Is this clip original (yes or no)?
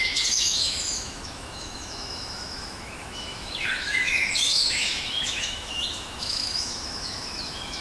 no